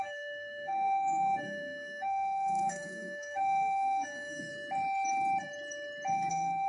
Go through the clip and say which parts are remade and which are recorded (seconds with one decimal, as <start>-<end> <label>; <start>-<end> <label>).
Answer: 0.0-4.5 remade; 4.5-6.3 recorded; 6.3-6.7 remade